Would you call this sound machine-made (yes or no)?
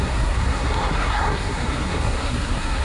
yes